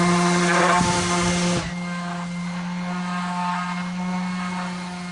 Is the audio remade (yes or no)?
no